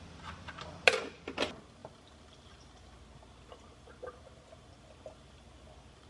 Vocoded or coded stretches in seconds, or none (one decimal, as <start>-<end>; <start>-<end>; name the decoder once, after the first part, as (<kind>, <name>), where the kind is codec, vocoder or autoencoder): none